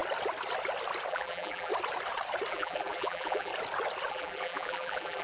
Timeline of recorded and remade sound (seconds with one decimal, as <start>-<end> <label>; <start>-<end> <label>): 0.0-1.1 recorded; 1.1-1.7 remade; 1.7-2.5 recorded; 2.5-3.5 remade; 3.5-4.1 recorded; 4.1-5.2 remade